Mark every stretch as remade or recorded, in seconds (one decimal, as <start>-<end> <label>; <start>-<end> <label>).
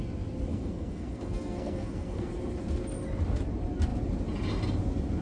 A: 0.0-0.5 recorded; 0.5-2.3 remade; 2.3-5.2 recorded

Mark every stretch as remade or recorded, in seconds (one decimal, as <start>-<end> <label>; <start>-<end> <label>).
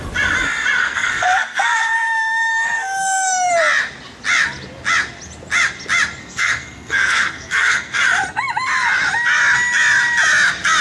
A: 0.0-0.8 recorded; 0.8-3.5 remade; 3.5-6.2 recorded; 6.2-8.0 remade; 8.0-10.8 recorded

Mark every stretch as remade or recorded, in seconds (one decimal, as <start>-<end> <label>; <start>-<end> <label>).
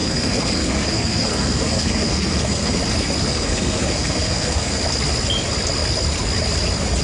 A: 0.0-2.8 remade; 2.8-3.3 recorded; 3.3-4.8 remade; 4.8-7.0 recorded